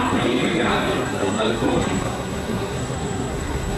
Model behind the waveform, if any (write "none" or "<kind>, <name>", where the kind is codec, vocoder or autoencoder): codec, SNAC